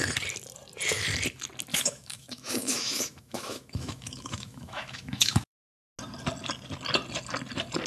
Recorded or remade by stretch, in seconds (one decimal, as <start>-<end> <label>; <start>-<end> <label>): 0.0-1.7 recorded; 1.7-5.9 remade; 5.9-7.9 recorded